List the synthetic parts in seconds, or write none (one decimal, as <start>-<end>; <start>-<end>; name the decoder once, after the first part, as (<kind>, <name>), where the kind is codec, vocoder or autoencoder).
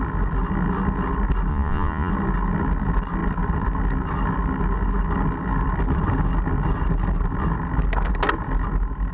1.5-2.1 (vocoder, Vocos)